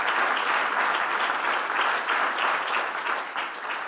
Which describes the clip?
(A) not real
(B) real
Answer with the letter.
B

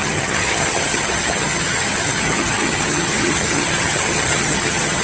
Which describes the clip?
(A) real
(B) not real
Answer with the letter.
B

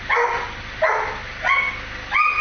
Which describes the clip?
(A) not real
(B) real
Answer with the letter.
B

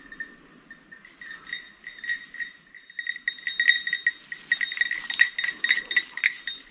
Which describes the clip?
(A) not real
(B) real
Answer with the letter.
B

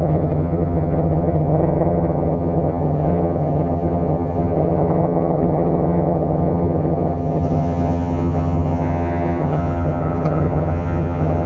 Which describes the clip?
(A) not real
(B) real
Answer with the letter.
A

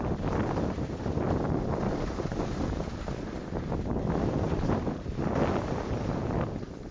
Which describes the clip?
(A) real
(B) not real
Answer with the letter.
A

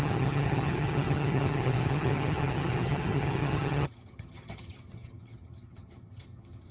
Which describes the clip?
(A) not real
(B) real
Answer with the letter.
A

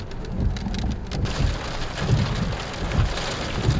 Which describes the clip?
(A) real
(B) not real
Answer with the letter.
A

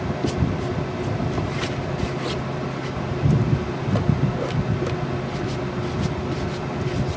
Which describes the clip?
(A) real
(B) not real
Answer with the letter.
A